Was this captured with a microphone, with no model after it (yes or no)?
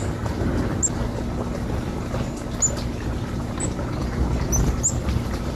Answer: yes